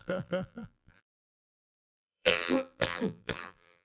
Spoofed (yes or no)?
yes